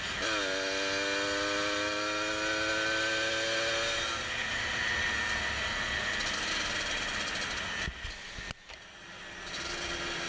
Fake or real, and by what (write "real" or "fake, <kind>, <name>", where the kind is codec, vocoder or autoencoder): real